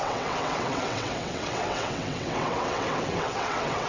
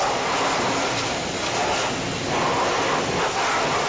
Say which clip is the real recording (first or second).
second